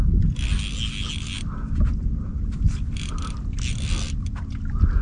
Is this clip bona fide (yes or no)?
yes